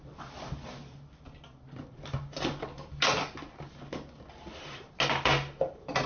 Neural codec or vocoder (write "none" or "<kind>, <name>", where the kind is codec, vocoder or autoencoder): none